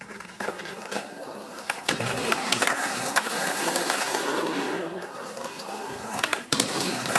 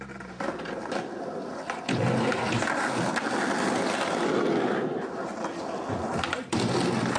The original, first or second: second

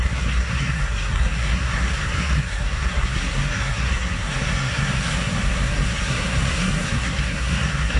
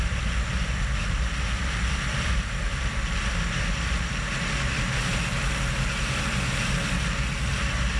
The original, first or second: second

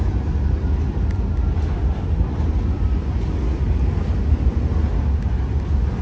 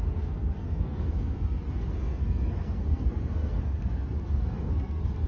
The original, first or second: first